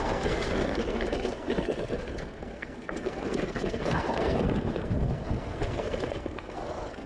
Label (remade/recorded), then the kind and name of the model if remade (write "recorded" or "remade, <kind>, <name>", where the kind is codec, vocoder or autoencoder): remade, codec, SNAC